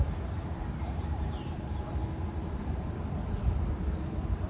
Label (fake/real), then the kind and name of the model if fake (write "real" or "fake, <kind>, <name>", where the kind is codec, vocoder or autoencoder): fake, vocoder, BigVGAN v2